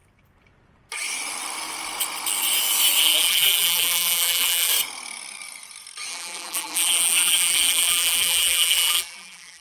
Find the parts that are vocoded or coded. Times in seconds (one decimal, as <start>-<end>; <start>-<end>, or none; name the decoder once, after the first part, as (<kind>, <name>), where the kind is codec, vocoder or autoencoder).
3.0-4.7 (vocoder, BigVGAN v2); 6.1-9.6